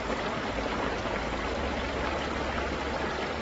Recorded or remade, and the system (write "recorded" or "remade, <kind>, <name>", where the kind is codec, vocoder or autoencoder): recorded